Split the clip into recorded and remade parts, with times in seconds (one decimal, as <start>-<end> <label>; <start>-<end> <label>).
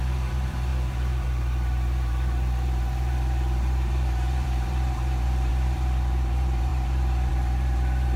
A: 0.0-8.2 remade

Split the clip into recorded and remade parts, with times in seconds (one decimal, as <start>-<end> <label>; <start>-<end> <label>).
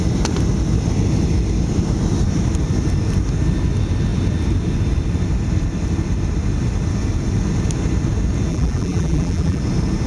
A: 0.0-8.5 recorded; 8.5-9.6 remade; 9.6-10.1 recorded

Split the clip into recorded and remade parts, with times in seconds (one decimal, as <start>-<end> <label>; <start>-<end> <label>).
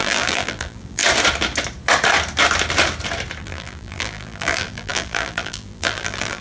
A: 0.0-1.0 remade; 1.0-3.4 recorded; 3.4-6.4 remade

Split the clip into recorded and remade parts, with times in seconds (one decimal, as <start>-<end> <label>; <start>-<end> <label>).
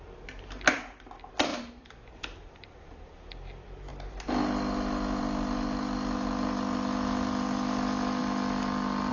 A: 0.0-1.5 recorded; 1.5-3.2 remade; 3.2-9.1 recorded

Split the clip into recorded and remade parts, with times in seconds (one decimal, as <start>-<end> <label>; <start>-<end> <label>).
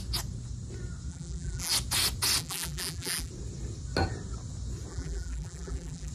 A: 0.0-1.1 recorded; 1.1-1.7 remade; 1.7-2.4 recorded; 2.4-3.3 remade; 3.3-4.9 recorded; 4.9-6.1 remade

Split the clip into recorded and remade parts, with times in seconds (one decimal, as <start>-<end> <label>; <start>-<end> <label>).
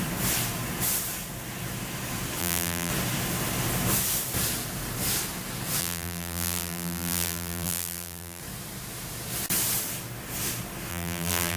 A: 0.0-2.4 recorded; 2.4-2.9 remade; 2.9-5.8 recorded; 5.8-8.4 remade; 8.4-10.9 recorded; 10.9-11.6 remade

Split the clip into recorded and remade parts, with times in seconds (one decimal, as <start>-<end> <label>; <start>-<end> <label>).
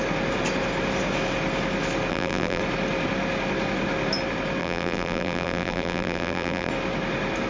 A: 0.0-2.1 recorded; 2.1-2.6 remade; 2.6-4.6 recorded; 4.6-6.7 remade; 6.7-7.5 recorded